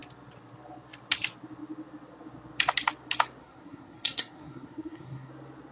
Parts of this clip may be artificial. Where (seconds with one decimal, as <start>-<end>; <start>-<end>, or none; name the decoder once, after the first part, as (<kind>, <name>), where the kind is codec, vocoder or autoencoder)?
3.4-5.3 (codec, SNAC)

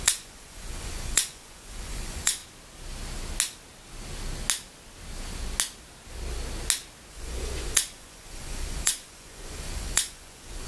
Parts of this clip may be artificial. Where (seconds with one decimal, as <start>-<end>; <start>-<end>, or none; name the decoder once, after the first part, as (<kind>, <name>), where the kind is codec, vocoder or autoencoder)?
0.0-2.4 (vocoder, Vocos); 7.1-10.7

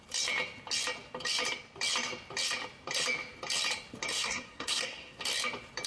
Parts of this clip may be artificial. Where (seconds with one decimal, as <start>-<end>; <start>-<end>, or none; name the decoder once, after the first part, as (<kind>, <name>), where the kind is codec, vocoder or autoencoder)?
4.1-5.2 (codec, SNAC)